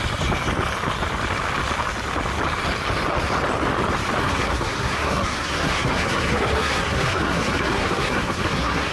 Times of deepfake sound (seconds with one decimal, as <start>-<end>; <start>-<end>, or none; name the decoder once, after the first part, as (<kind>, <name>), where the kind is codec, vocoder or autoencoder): 4.2-8.9 (codec, SNAC)